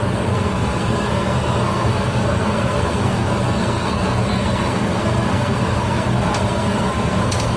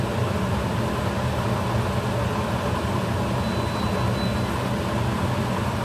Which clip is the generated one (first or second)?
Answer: first